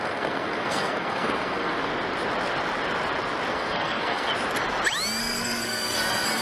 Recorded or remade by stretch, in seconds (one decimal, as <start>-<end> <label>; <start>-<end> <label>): 0.0-1.9 remade; 1.9-3.5 recorded; 3.5-4.3 remade; 4.3-5.2 recorded; 5.2-6.4 remade